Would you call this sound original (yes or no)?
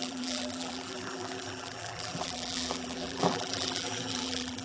no